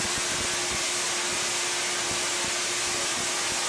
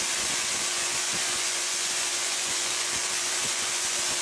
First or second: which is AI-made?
second